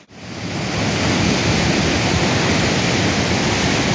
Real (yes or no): yes